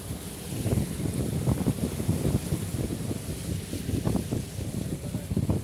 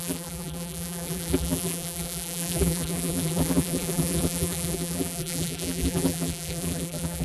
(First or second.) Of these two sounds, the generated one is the second